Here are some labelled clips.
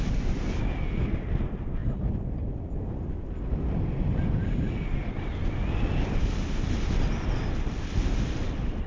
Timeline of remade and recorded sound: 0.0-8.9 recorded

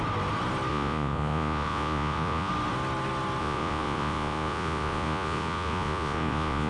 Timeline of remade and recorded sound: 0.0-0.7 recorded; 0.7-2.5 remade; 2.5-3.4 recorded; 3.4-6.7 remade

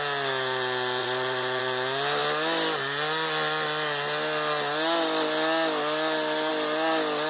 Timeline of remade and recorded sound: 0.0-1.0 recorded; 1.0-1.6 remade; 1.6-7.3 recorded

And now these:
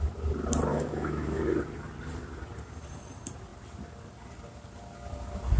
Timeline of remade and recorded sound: 0.0-0.7 recorded; 0.7-1.4 remade; 1.4-5.6 recorded

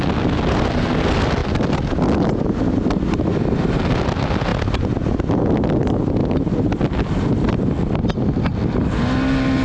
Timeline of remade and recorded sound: 0.0-9.6 recorded

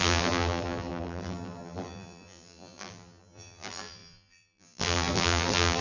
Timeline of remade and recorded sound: 0.0-5.8 remade

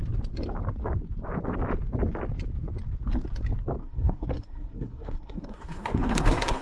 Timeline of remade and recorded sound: 0.0-3.8 recorded; 3.8-6.6 remade